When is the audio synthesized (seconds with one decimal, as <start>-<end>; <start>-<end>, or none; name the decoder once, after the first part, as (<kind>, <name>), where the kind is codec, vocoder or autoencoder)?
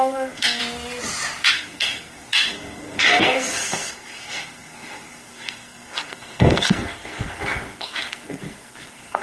0.0-0.6 (codec, SNAC); 1.5-9.2